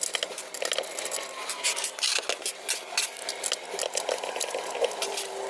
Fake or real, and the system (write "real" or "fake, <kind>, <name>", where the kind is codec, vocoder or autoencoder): real